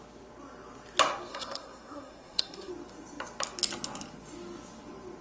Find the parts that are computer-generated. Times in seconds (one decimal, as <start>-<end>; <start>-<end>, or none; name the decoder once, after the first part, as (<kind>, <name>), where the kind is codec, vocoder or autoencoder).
1.3-2.7 (codec, SNAC)